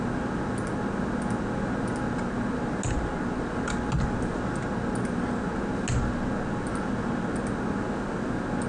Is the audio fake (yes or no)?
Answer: no